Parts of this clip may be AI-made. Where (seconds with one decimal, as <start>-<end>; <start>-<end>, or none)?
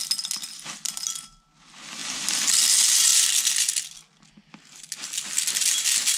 none